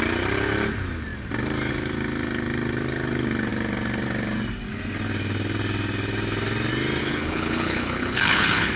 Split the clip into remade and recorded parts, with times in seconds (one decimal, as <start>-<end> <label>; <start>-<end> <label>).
0.0-7.0 recorded; 7.0-8.8 remade